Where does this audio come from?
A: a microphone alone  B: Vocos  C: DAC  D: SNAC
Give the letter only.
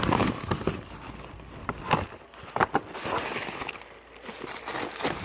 A